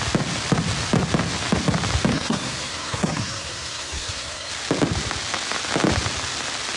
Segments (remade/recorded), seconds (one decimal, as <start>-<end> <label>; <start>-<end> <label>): 0.0-2.1 recorded; 2.1-4.5 remade; 4.5-6.8 recorded